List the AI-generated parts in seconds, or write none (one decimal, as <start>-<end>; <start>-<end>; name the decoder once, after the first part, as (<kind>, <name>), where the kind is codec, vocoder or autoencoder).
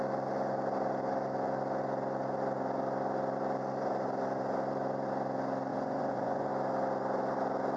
5.7-6.5 (vocoder, Vocos)